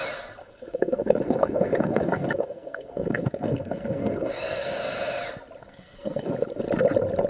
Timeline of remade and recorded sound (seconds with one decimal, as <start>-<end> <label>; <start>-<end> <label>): 0.0-0.4 recorded; 0.4-4.8 remade; 4.8-5.6 recorded; 5.6-6.3 remade; 6.3-7.3 recorded